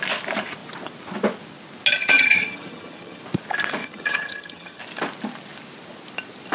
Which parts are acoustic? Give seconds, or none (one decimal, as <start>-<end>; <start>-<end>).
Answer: 0.0-2.0; 3.2-3.8; 4.8-6.5